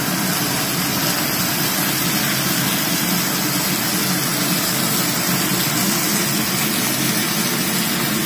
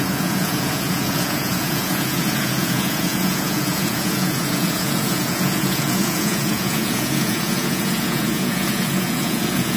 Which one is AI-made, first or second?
second